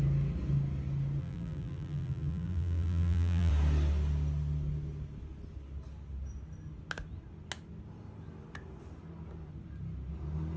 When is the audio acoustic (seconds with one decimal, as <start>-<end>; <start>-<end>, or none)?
0.0-1.2; 3.5-10.6